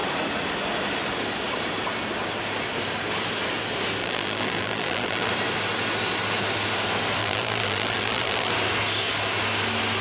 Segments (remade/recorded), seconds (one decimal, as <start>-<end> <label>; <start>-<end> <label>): 0.0-4.0 recorded; 4.0-5.3 remade; 5.3-7.2 recorded; 7.2-8.5 remade; 8.5-10.0 recorded